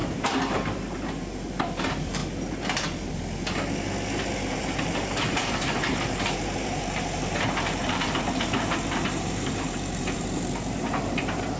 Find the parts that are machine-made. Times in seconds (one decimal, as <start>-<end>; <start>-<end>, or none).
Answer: 0.0-2.2; 4.5-11.6